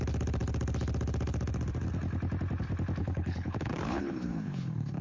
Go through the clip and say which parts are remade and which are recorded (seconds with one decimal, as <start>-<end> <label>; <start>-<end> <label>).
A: 0.0-3.0 recorded; 3.0-5.0 remade